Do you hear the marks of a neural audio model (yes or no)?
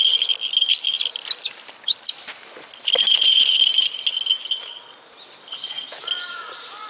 no